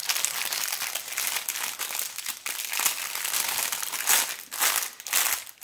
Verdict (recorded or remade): recorded